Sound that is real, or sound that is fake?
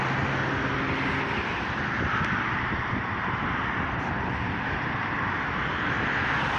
real